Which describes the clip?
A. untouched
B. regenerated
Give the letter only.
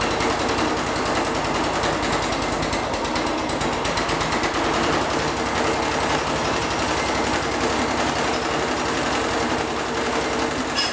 A